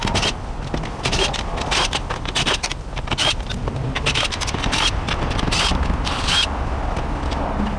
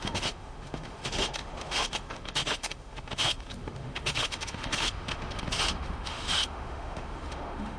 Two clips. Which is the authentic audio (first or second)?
first